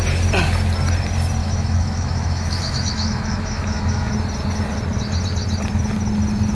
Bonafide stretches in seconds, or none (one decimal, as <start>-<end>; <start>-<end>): 0.0-1.4; 4.1-6.5